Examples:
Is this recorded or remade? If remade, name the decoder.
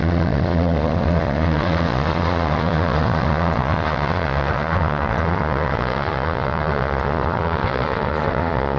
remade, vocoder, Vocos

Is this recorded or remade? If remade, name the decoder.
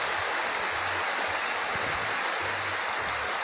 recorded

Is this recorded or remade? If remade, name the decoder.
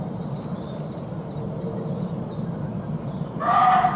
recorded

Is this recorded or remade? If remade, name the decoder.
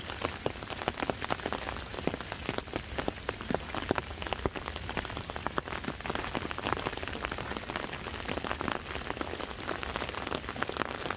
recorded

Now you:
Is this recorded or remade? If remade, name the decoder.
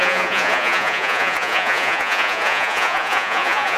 remade, vocoder, Vocos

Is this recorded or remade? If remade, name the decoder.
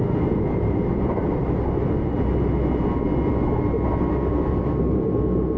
recorded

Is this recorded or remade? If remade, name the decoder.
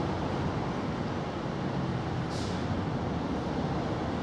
recorded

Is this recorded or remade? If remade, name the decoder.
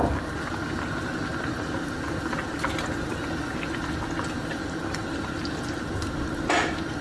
recorded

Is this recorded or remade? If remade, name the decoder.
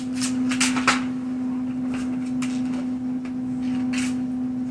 recorded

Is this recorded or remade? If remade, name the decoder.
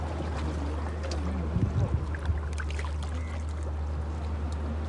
recorded